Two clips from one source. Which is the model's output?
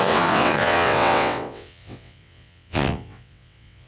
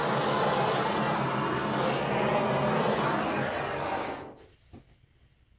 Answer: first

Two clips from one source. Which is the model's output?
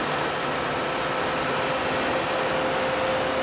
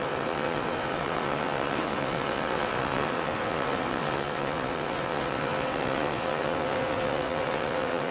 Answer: second